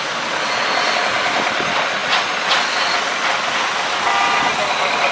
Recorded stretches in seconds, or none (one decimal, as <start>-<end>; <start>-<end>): 0.0-5.1